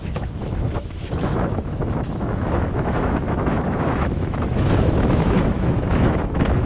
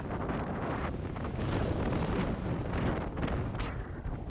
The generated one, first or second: first